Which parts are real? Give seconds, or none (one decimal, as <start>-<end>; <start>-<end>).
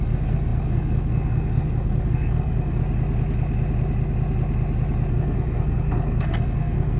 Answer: 2.8-5.1